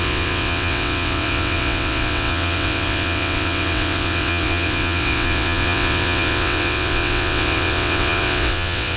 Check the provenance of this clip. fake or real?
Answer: fake